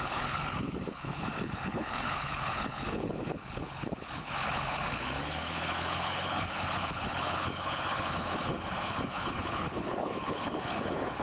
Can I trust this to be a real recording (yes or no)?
no